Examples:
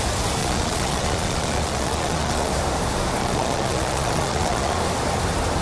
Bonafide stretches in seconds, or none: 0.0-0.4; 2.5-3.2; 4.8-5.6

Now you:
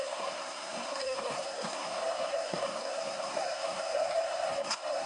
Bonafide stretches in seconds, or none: none

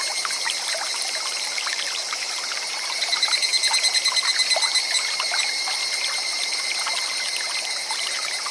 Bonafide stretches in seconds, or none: 3.5-7.9

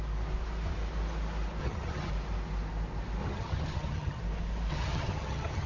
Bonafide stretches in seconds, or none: 0.0-1.6; 2.1-3.2; 4.2-4.7

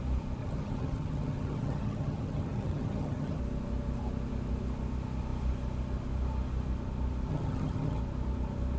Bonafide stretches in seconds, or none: 0.0-0.4; 3.4-7.3; 8.0-8.8

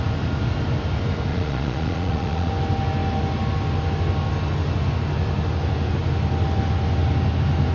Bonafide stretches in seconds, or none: 0.0-1.3; 2.5-7.7